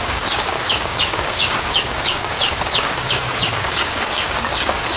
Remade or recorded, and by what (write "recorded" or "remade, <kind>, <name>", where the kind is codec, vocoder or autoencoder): remade, codec, DAC